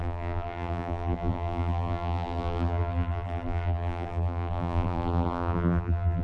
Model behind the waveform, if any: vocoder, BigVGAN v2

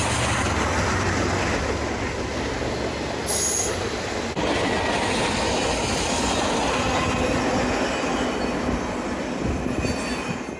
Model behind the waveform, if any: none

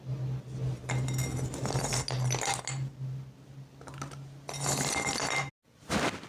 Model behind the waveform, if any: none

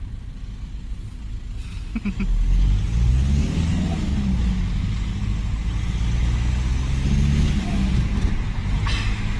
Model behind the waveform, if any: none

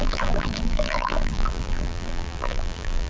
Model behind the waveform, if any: vocoder, BigVGAN v2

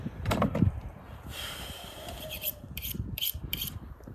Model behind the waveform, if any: vocoder, BigVGAN v2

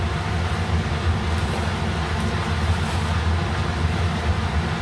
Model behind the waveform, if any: none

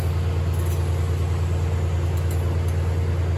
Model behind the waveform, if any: none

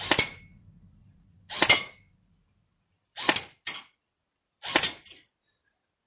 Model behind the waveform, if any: vocoder, BigVGAN v2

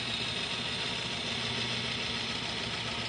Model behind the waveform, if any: none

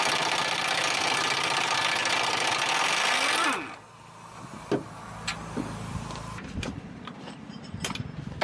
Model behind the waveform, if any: none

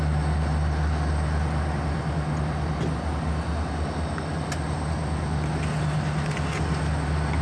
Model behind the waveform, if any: none